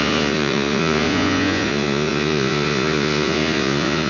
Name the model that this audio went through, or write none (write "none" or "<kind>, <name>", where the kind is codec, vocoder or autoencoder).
vocoder, Vocos